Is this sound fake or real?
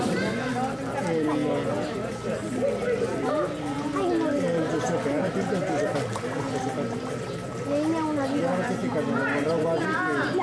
real